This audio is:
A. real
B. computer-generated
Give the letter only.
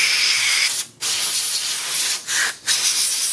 A